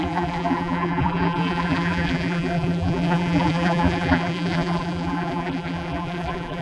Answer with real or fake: fake